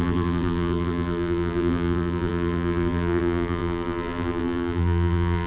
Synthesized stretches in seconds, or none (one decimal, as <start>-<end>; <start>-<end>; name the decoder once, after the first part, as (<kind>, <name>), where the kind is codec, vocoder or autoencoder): 0.0-5.5 (vocoder, BigVGAN v2)